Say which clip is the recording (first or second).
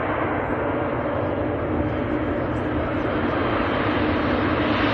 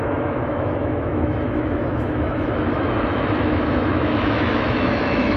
first